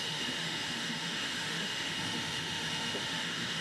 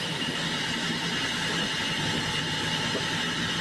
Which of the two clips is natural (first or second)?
second